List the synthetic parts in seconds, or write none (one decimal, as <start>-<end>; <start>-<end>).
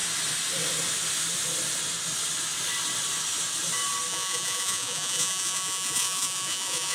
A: 4.1-6.9